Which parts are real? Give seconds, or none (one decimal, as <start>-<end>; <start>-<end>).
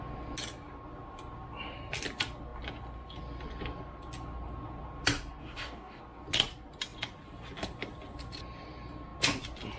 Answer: 0.0-5.4; 6.0-9.8